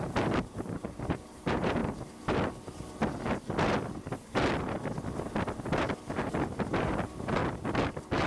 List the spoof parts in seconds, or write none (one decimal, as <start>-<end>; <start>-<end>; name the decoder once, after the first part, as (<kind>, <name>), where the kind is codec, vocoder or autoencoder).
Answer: 0.0-1.8 (vocoder, BigVGAN v2); 6.8-7.4